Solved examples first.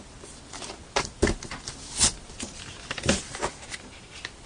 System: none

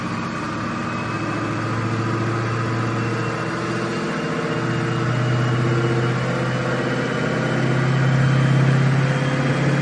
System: none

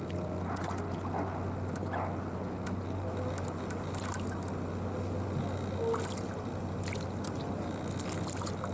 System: none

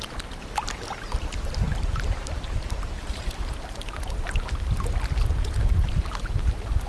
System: none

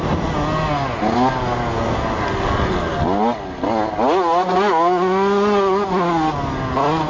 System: none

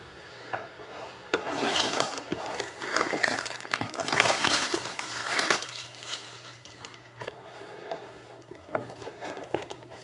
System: codec, SNAC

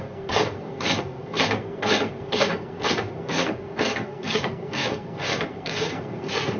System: codec, SNAC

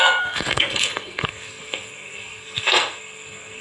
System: codec, SNAC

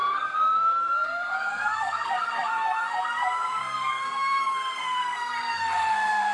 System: codec, SNAC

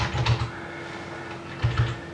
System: none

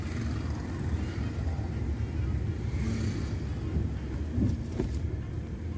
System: none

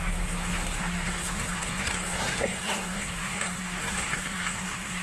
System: codec, SNAC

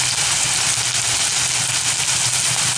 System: none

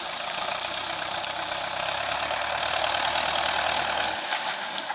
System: none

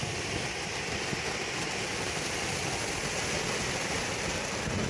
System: none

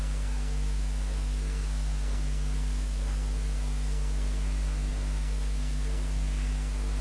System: codec, SNAC